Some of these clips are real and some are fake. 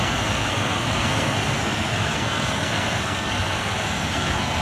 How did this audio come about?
fake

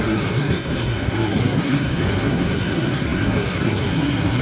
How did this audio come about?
fake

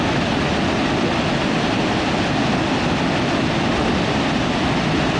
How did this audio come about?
real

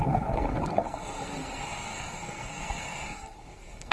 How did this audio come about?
fake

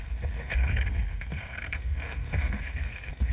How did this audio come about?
fake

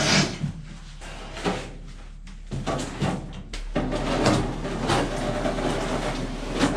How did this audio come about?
real